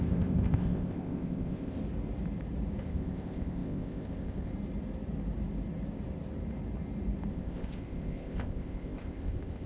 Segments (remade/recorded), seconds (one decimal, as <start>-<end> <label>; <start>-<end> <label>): 0.0-1.8 remade; 1.8-2.8 recorded; 2.8-4.5 remade; 4.5-7.3 recorded; 7.3-9.7 remade